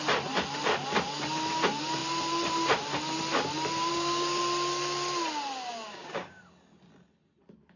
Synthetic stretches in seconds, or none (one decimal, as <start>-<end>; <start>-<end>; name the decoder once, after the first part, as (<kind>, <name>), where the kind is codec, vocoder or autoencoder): 3.9-4.4 (codec, DAC); 5.7-6.4